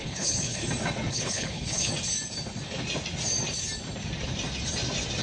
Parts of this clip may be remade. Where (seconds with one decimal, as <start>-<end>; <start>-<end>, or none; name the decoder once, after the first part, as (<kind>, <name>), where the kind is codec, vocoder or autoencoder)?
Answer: 0.0-0.6 (codec, HILCodec); 1.1-1.9